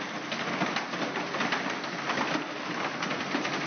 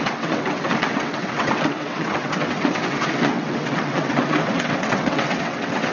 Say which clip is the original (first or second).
first